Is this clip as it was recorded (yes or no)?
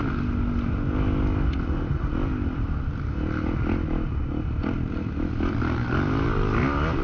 yes